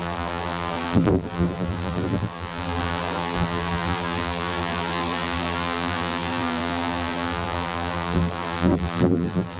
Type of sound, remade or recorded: remade